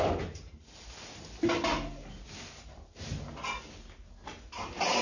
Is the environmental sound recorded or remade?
recorded